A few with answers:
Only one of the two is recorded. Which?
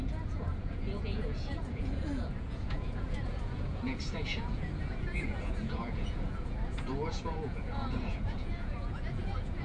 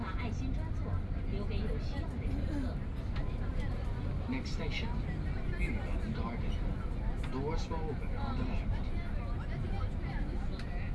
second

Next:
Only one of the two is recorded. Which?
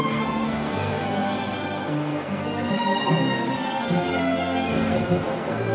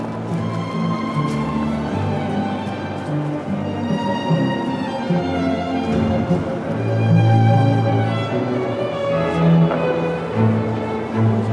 second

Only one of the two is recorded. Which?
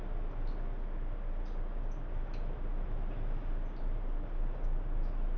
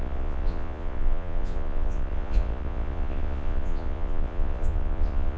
first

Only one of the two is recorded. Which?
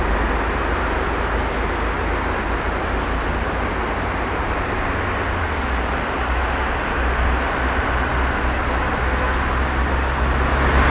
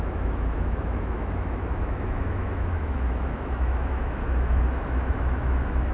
first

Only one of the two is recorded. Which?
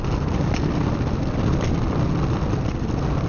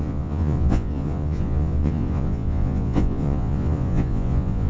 first